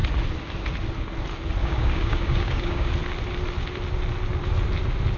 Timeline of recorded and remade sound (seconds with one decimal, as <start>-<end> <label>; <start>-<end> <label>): 0.0-1.6 recorded; 1.6-2.9 remade; 2.9-5.2 recorded